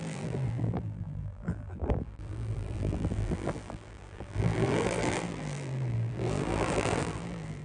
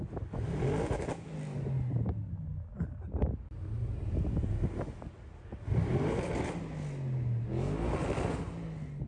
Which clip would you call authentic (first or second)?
second